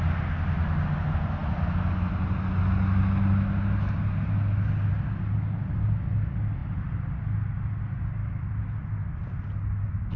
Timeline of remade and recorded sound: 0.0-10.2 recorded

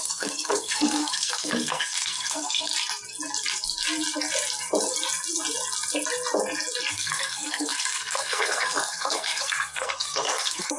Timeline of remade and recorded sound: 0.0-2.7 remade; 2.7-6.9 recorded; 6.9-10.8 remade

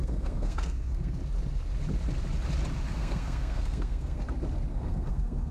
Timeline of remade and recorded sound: 0.0-1.2 remade; 1.2-2.9 recorded; 2.9-4.2 remade; 4.2-4.7 recorded; 4.7-5.5 remade

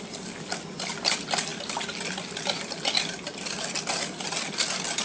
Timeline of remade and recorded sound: 0.0-5.0 recorded

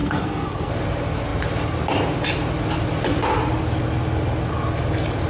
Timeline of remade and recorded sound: 0.0-0.7 remade; 0.7-5.3 recorded

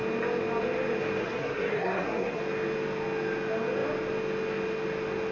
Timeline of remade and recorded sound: 0.0-1.2 recorded; 1.2-2.4 remade; 2.4-5.3 recorded